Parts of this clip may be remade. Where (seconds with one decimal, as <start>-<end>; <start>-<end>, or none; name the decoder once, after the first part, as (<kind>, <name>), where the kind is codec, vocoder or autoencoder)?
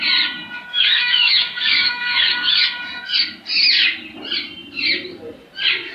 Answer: 0.7-2.6 (codec, DAC)